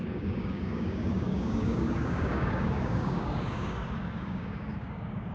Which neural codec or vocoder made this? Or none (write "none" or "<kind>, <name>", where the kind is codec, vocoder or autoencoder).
codec, DAC